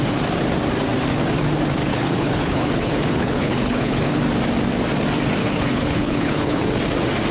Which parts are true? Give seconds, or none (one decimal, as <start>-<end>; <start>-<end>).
0.0-1.9; 4.2-5.4; 6.7-7.3